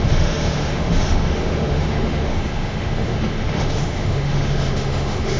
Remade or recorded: remade